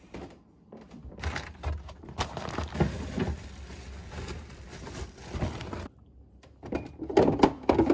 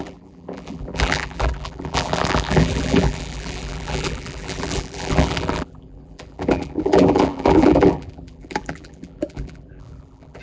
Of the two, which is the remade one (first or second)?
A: second